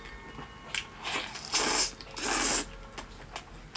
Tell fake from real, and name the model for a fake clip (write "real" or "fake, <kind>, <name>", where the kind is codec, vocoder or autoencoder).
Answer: real